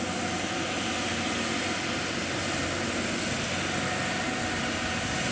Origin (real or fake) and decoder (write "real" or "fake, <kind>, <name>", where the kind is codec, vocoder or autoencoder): real